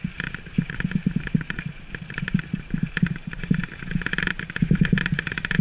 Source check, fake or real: fake